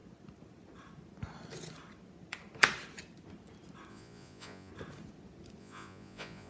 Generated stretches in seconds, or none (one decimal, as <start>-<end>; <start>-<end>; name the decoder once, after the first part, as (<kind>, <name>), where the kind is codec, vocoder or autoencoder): 3.9-4.7 (vocoder, Vocos); 5.6-6.5